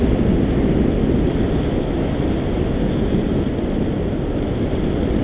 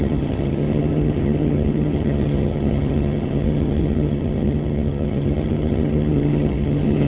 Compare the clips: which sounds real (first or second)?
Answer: first